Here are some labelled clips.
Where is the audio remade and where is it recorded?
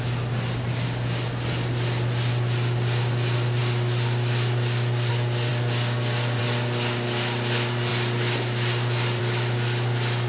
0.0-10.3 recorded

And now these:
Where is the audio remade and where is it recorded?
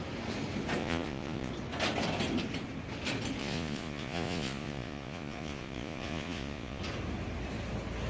0.0-0.8 recorded; 0.8-1.5 remade; 1.5-3.4 recorded; 3.4-6.8 remade; 6.8-8.1 recorded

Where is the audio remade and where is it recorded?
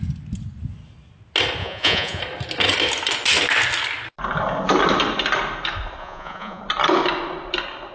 0.0-1.6 recorded; 1.6-2.2 remade; 2.2-6.0 recorded; 6.0-6.6 remade; 6.6-7.9 recorded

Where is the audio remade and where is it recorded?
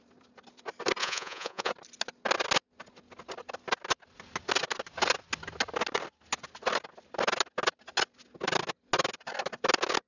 0.0-1.0 recorded; 1.0-1.7 remade; 1.7-10.1 recorded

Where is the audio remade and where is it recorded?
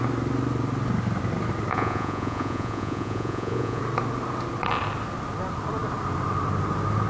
0.0-1.7 recorded; 1.7-3.8 remade; 3.8-7.1 recorded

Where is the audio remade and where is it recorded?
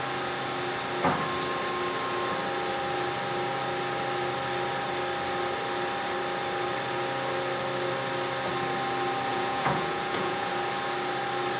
0.0-9.3 recorded; 9.3-10.5 remade; 10.5-11.6 recorded